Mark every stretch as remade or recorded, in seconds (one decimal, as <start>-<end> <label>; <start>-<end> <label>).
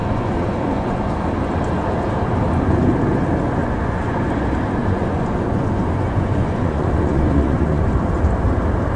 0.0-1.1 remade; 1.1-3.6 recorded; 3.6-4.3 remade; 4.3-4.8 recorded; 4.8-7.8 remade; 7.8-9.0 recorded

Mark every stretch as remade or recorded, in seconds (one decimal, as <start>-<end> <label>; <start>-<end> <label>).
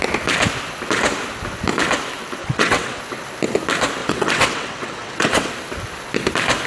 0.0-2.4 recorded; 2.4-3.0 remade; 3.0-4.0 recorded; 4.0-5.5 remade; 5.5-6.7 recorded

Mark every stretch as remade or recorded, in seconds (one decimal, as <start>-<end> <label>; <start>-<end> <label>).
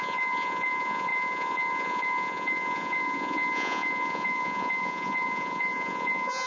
0.0-6.5 remade